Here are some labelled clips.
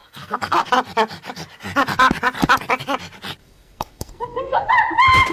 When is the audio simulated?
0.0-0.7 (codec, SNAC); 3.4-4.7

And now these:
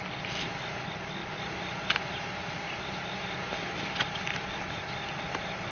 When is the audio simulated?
none

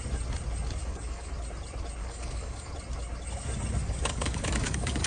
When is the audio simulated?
0.8-1.3 (codec, DAC); 2.0-2.7; 3.8-5.1

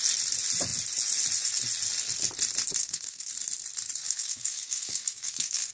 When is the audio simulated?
2.8-3.3 (codec, SNAC); 4.0-5.7

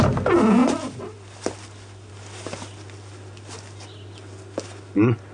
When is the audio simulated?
none